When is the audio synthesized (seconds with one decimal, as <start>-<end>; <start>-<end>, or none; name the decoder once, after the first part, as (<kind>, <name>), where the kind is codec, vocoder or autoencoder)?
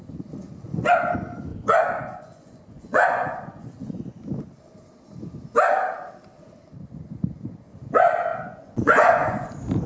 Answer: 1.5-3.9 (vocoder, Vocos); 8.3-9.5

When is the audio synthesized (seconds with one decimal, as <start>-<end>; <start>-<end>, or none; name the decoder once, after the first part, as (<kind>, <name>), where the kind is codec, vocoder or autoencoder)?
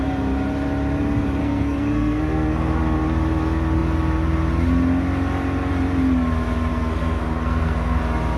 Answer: 1.4-2.8 (codec, SNAC); 6.7-8.0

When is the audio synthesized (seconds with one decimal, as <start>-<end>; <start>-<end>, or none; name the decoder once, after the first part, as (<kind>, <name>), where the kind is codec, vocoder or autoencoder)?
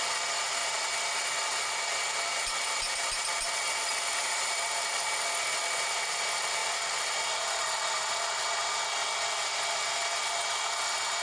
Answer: 0.6-5.4 (vocoder, BigVGAN v2); 6.6-8.4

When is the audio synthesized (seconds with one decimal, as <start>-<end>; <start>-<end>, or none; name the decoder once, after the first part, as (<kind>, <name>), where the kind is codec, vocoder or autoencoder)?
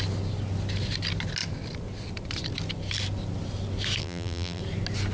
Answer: 4.0-4.6 (vocoder, BigVGAN v2)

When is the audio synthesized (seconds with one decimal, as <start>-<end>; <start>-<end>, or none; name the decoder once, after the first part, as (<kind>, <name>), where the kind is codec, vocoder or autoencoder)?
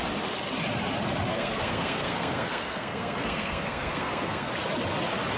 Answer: 1.3-4.5 (codec, SNAC)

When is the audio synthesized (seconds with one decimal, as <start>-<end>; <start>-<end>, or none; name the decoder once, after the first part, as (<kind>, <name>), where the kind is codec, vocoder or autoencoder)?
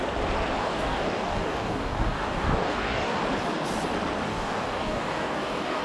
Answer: 0.6-3.2 (codec, DAC); 4.3-5.8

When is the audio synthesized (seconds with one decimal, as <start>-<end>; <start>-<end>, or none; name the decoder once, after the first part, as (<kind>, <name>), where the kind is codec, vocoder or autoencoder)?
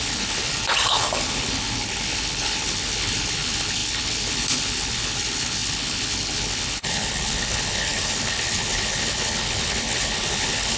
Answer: 0.0-10.8 (codec, HILCodec)